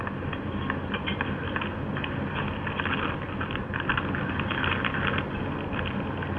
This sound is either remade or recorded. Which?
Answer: recorded